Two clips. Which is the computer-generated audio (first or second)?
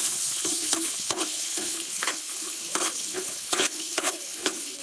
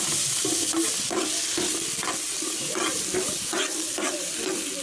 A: first